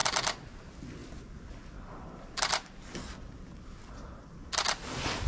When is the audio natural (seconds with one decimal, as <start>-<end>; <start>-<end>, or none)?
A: 0.0-5.3